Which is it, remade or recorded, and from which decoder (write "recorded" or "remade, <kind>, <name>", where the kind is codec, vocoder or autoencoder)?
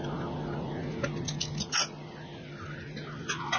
recorded